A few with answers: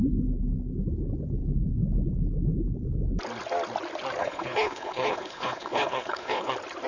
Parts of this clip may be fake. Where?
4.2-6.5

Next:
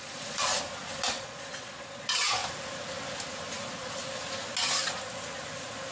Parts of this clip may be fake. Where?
0.0-0.5; 1.1-2.4

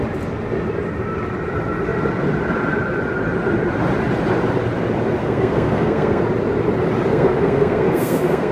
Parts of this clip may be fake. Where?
5.2-6.2; 7.1-8.5

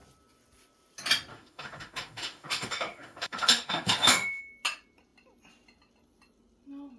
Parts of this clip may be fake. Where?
1.3-4.4